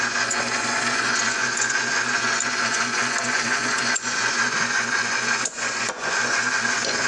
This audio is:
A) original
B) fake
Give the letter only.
B